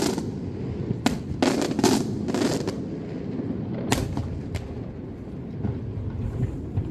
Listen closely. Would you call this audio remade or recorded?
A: recorded